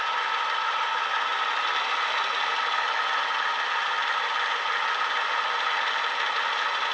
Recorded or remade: recorded